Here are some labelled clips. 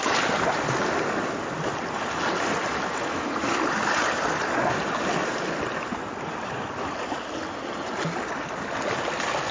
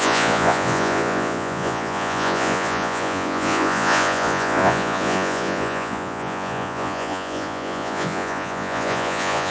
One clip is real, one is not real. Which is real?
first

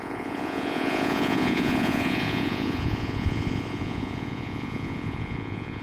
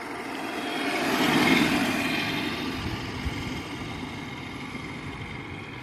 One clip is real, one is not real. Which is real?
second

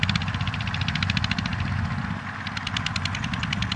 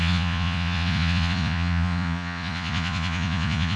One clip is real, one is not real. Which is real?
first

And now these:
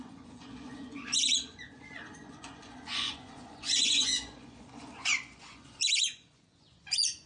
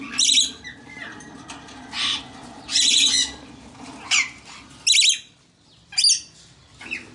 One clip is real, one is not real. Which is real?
second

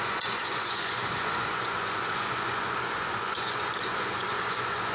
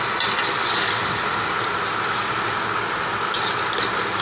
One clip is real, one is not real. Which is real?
second